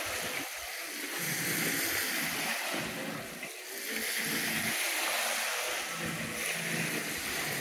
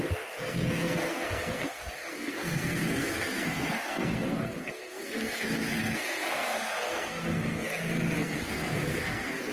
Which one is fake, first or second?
second